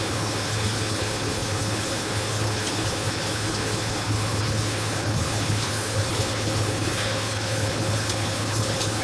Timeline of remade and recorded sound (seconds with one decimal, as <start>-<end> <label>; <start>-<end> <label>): 0.0-9.0 remade